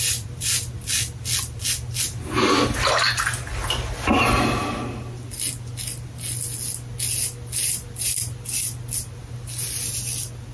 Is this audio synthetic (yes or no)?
no